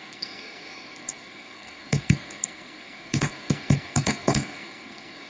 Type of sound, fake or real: fake